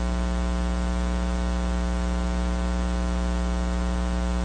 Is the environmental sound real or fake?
real